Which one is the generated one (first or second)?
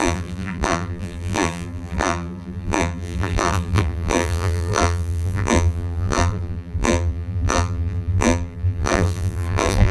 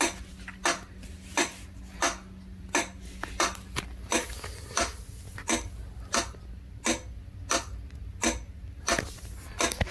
first